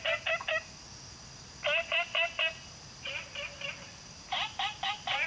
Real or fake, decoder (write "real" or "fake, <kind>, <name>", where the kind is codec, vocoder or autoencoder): real